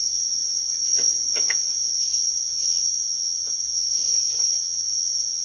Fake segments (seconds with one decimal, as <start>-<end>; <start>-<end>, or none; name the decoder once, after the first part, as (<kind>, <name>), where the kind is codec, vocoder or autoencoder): 0.0-5.4 (vocoder, WaveNeXt)